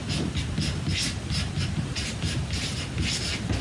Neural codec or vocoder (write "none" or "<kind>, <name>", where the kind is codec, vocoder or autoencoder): none